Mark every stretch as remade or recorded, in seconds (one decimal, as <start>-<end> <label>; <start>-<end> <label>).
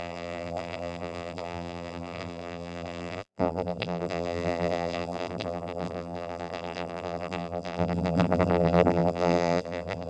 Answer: 0.0-10.1 remade